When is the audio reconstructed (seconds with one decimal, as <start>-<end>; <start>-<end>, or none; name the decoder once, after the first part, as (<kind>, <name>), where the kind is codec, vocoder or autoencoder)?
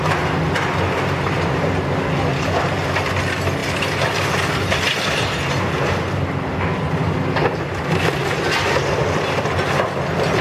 none